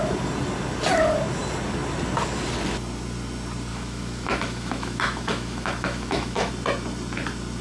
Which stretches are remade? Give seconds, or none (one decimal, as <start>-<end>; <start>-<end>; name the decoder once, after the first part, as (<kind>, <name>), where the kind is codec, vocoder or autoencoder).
3.7-6.5 (autoencoder, DAC-VAE)